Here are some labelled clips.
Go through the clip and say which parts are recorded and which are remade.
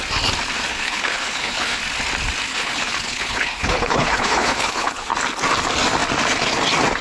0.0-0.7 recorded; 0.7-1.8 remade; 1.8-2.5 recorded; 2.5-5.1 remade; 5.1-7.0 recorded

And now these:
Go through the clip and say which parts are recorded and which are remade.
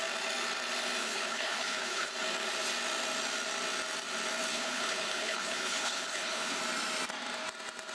0.0-1.0 recorded; 1.0-2.1 remade; 2.1-4.5 recorded; 4.5-6.6 remade; 6.6-7.9 recorded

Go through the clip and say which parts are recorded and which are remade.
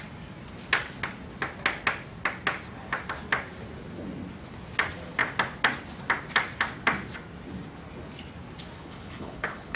0.0-8.8 recorded; 8.8-9.8 remade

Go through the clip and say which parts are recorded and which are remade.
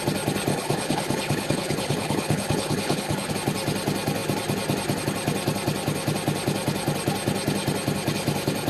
0.0-0.5 recorded; 0.5-3.3 remade; 3.3-8.7 recorded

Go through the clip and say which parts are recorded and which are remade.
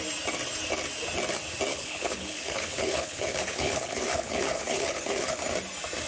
0.0-1.7 recorded; 1.7-5.4 remade; 5.4-6.1 recorded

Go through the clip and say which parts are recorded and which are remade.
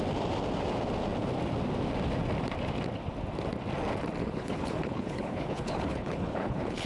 0.0-4.2 recorded; 4.2-6.9 remade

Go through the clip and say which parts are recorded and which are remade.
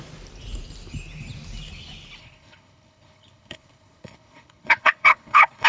0.0-2.2 recorded; 2.2-5.7 remade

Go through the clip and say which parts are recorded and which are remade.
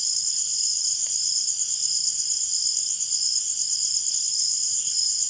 0.0-0.9 remade; 0.9-4.1 recorded; 4.1-5.3 remade